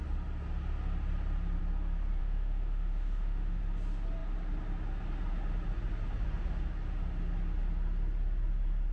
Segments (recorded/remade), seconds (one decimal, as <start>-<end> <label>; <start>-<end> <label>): 0.0-2.2 recorded; 2.2-3.6 remade; 3.6-8.9 recorded